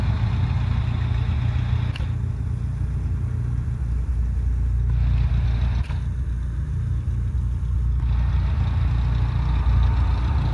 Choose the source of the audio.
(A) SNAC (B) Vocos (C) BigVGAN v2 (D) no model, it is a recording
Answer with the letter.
D